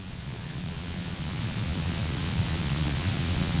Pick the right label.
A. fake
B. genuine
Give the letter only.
A